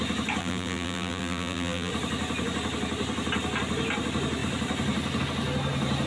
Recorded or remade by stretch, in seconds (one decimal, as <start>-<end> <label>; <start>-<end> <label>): 0.0-0.4 recorded; 0.4-1.9 remade; 1.9-6.1 recorded